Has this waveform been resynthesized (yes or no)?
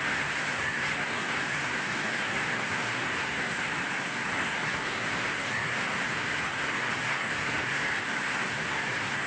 yes